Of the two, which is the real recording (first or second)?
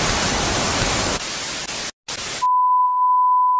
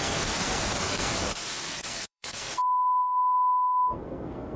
first